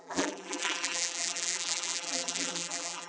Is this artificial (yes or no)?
yes